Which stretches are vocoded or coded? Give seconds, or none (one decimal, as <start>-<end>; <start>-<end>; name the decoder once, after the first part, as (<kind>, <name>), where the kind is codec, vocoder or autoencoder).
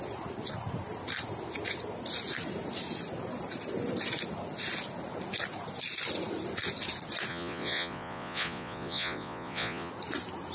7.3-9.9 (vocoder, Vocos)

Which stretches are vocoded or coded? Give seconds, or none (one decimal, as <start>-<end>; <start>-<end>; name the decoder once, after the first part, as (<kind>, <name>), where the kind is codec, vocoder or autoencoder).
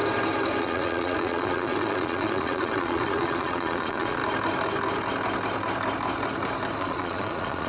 0.6-4.2 (vocoder, Vocos); 6.8-7.7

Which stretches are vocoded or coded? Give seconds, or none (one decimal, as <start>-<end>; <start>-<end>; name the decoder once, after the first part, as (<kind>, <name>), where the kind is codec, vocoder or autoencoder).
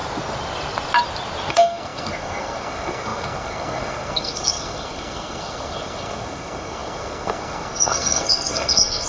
1.5-9.1 (codec, SNAC)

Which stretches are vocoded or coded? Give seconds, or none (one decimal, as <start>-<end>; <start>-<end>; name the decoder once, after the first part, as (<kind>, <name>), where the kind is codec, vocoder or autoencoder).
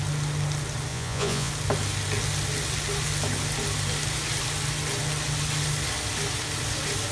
0.9-1.5 (vocoder, Vocos)